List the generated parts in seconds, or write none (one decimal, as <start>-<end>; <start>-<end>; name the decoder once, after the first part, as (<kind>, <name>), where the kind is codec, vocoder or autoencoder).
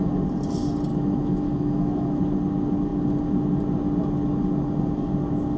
0.9-2.2 (autoencoder, DAC-VAE)